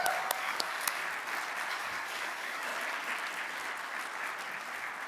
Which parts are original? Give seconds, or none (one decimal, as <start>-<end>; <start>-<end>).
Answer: 1.0-1.7; 2.7-5.1